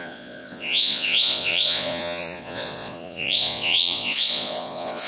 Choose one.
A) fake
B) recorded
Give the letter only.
A